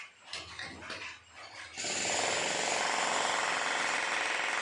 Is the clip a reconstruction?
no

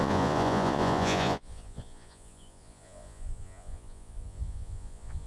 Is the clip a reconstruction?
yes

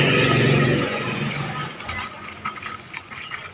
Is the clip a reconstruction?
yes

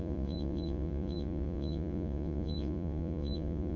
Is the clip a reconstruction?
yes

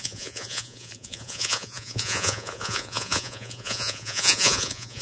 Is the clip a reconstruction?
yes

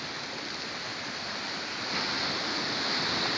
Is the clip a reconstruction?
no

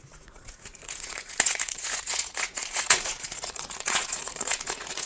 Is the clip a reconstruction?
yes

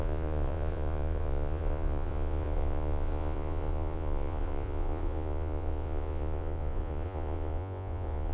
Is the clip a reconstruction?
yes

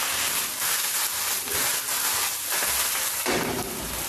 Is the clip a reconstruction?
no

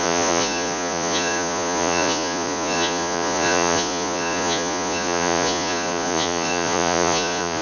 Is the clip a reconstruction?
yes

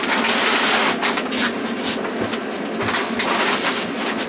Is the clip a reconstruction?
no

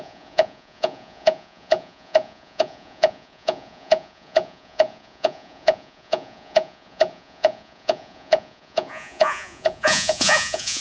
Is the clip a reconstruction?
yes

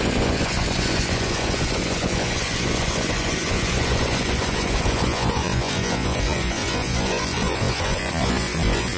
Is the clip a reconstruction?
yes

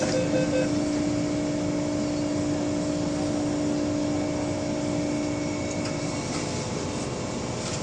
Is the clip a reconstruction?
no